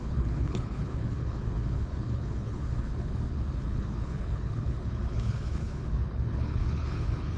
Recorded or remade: remade